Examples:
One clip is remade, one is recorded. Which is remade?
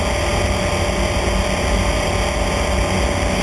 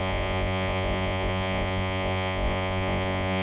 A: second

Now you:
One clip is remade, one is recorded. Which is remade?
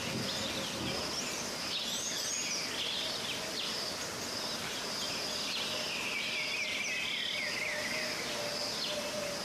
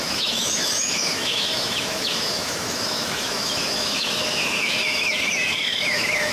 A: second